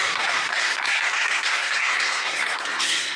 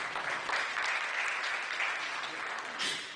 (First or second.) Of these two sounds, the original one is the second